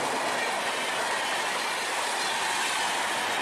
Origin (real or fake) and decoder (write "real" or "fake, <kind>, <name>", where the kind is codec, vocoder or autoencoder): real